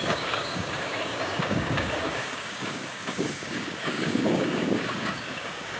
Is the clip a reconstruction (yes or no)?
yes